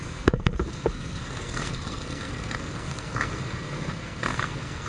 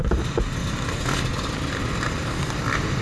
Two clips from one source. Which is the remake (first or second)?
first